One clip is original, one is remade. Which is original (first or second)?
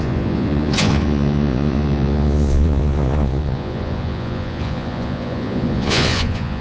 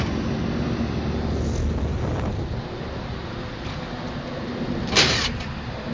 second